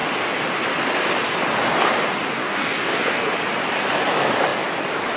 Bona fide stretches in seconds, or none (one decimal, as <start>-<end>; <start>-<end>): 0.0-2.4; 3.3-5.2